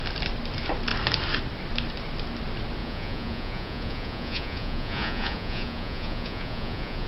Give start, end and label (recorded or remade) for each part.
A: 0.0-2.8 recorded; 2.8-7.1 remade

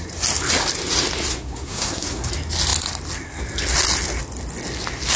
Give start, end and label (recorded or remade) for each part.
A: 0.0-1.3 recorded; 1.3-2.3 remade; 2.3-5.2 recorded

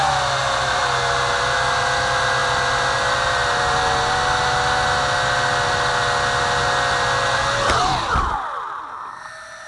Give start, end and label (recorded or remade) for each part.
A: 0.0-9.7 recorded

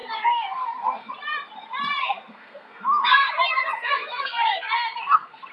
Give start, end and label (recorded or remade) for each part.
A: 0.0-1.1 remade; 1.1-2.0 recorded; 2.0-5.5 remade

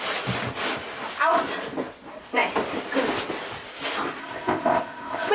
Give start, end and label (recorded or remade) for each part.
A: 0.0-4.2 recorded; 4.2-5.3 remade

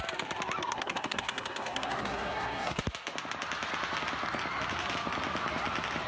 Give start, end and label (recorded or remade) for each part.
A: 0.0-0.6 recorded; 0.6-2.8 remade; 2.8-6.1 recorded